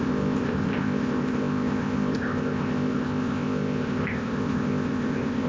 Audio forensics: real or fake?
fake